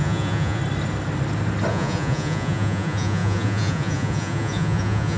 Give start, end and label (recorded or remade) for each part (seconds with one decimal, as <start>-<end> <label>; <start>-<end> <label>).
0.0-0.6 remade; 0.6-1.7 recorded; 1.7-5.2 remade

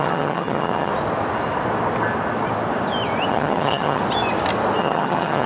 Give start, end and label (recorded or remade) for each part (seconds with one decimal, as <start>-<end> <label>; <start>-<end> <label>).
0.0-0.9 remade; 0.9-3.3 recorded; 3.3-4.0 remade; 4.0-4.8 recorded; 4.8-5.5 remade

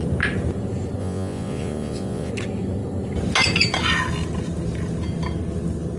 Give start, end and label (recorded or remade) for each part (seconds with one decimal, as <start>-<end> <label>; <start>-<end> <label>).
0.0-1.0 recorded; 1.0-2.3 remade; 2.3-6.0 recorded